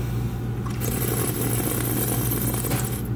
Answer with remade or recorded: recorded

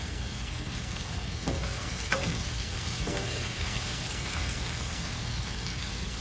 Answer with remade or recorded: remade